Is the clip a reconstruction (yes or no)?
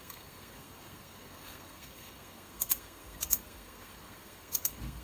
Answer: yes